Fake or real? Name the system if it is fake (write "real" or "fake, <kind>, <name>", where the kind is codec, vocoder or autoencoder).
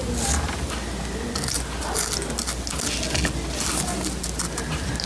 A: real